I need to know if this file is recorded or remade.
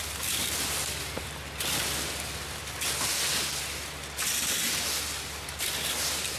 recorded